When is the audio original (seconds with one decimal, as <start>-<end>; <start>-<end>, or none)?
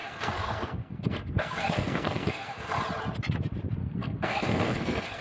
2.8-3.8